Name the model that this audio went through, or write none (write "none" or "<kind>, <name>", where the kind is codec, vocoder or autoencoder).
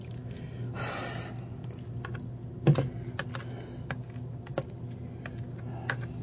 none